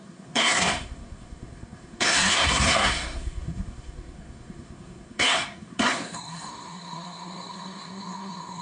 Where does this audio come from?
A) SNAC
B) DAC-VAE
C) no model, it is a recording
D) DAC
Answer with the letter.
A